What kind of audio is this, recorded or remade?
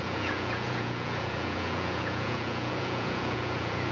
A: remade